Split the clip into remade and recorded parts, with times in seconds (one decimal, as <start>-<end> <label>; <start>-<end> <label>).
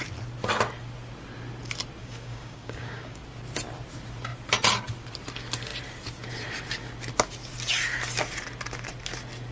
0.0-2.0 recorded; 2.0-3.2 remade; 3.2-9.5 recorded